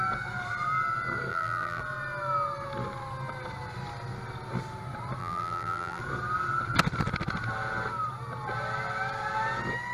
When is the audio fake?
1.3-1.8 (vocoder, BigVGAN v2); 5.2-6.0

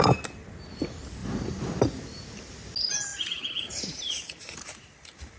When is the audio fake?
1.2-1.8 (vocoder, BigVGAN v2); 3.1-5.4

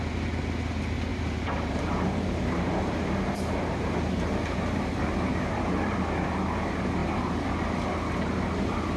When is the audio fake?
1.1-5.5 (vocoder, BigVGAN v2)

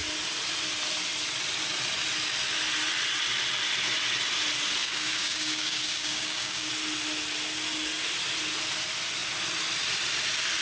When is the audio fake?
4.8-6.7 (codec, DAC)

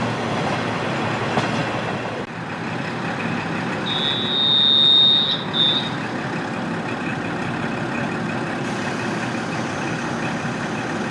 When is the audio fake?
none